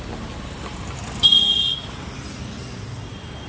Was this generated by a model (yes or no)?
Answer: no